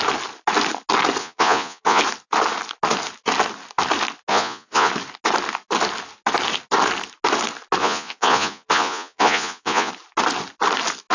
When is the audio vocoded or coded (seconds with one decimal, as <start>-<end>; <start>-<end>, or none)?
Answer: 1.2-2.0; 4.3-4.9; 7.8-9.9